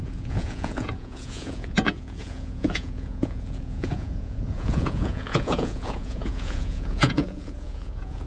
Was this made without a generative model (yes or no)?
no